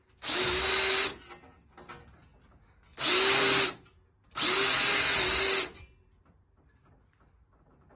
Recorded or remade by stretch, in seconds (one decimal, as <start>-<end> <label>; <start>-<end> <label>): 0.0-8.0 recorded